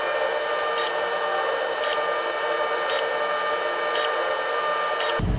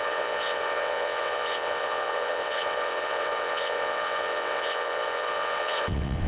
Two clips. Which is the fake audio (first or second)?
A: second